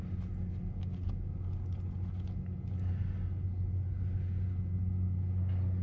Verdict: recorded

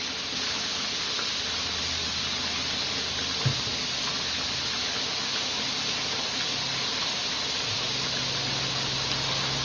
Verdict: recorded